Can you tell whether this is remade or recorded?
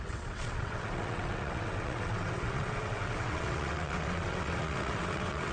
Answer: remade